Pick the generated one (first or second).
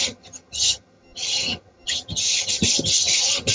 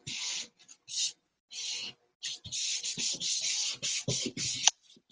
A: first